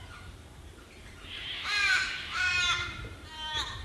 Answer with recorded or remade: remade